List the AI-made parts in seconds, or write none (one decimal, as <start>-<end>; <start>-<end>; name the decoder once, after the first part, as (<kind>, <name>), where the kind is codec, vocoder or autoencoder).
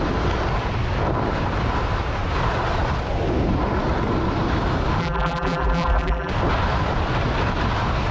5.0-6.3 (vocoder, BigVGAN v2)